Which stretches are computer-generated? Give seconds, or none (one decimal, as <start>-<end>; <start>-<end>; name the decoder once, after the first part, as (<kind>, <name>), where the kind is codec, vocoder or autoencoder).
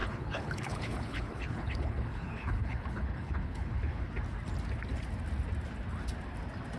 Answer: 0.0-4.1 (codec, HILCodec)